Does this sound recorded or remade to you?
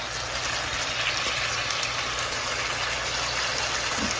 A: recorded